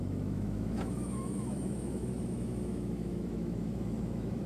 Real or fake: fake